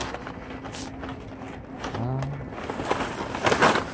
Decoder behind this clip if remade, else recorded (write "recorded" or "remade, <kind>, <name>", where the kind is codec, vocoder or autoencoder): recorded